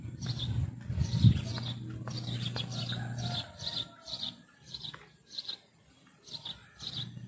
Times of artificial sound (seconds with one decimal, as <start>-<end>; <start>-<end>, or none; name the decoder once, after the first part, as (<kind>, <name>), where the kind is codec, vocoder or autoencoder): none